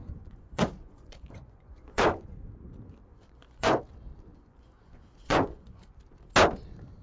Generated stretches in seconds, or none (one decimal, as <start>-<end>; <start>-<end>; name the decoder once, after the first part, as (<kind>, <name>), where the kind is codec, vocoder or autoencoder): 0.0-2.5 (vocoder, Vocos); 3.1-3.8; 4.3-6.0